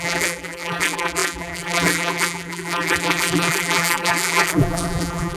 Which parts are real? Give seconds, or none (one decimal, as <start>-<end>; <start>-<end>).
none